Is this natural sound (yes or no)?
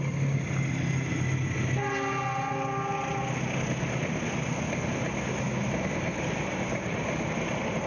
yes